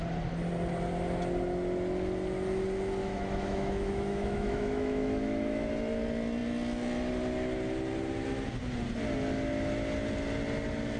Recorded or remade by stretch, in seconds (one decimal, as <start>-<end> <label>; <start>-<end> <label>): 0.0-3.0 recorded; 3.0-5.7 remade; 5.7-11.0 recorded